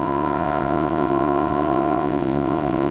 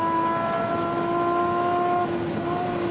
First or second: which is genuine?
second